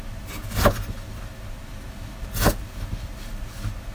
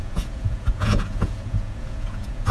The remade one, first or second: second